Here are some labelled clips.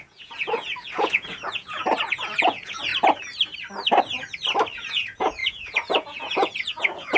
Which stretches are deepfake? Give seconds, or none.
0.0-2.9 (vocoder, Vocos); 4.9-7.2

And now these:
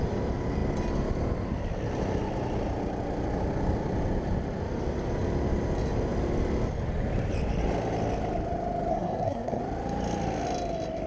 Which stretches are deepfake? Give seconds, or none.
8.9-9.6 (codec, SNAC)